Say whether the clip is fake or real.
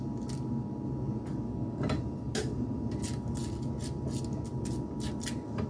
real